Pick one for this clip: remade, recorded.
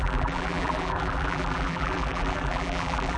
remade